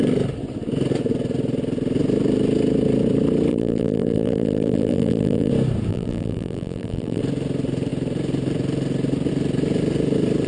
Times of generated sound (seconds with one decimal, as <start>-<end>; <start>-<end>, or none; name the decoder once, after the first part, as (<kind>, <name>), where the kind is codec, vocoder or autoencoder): 3.5-5.5 (vocoder, BigVGAN v2); 5.9-7.2